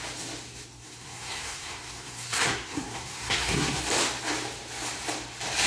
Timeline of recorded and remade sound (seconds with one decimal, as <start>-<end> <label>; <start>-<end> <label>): 0.0-0.8 recorded; 0.8-3.8 remade; 3.8-5.7 recorded